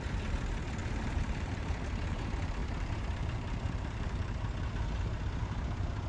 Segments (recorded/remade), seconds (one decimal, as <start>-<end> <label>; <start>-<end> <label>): 0.0-0.8 recorded; 0.8-1.8 remade; 1.8-2.6 recorded; 2.6-4.4 remade; 4.4-6.1 recorded